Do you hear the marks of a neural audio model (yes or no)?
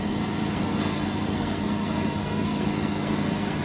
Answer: yes